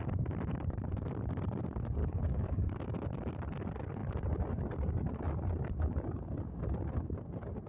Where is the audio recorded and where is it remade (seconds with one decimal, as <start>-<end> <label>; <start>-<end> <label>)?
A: 0.0-2.0 recorded; 2.0-2.8 remade; 2.8-7.7 recorded